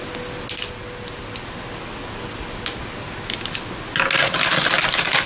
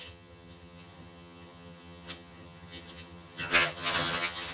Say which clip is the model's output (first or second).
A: second